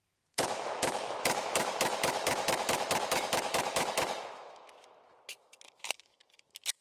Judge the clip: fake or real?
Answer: fake